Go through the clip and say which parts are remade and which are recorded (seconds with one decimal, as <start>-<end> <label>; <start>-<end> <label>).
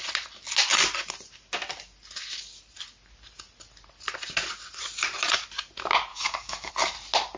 0.0-6.1 recorded; 6.1-6.7 remade; 6.7-7.4 recorded